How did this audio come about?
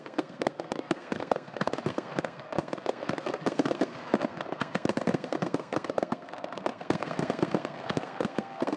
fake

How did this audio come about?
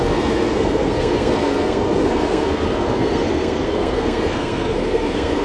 fake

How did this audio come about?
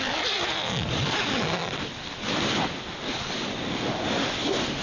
real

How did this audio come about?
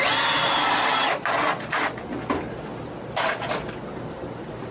real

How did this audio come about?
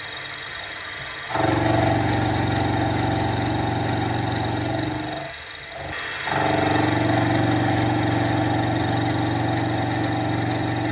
real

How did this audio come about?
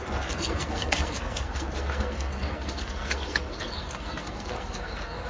fake